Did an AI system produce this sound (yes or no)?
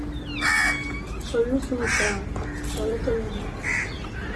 no